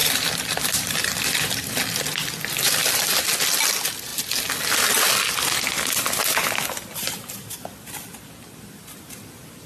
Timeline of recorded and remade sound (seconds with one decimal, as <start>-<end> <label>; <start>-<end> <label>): 0.0-3.0 remade; 3.0-9.7 recorded